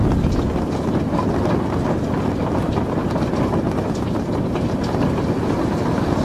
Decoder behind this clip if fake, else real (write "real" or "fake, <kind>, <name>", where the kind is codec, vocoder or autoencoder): real